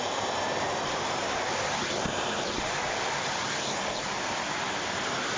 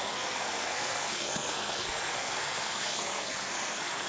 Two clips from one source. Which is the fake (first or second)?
second